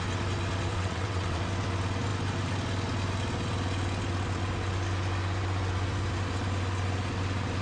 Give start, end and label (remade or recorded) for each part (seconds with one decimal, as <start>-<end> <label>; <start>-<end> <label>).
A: 0.0-0.7 recorded; 0.7-1.4 remade; 1.4-7.6 recorded